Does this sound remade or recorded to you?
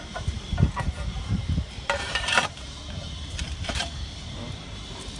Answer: remade